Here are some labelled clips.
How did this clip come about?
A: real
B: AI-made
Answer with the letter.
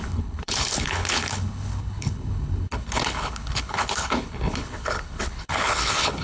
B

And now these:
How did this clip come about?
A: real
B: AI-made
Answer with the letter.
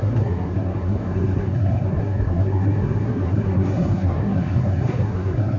B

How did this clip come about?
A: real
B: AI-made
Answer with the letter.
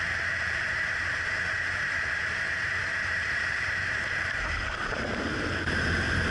B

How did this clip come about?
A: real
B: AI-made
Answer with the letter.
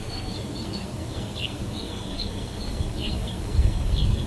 B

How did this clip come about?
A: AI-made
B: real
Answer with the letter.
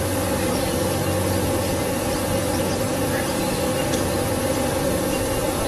B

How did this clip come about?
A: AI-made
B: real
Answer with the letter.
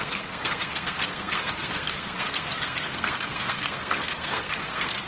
A